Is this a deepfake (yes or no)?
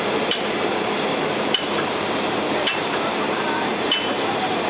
yes